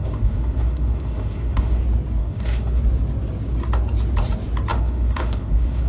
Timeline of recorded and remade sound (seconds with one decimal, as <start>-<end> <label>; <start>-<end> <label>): 0.0-1.8 remade; 1.8-2.2 recorded; 2.2-2.8 remade; 2.8-4.7 recorded; 4.7-5.9 remade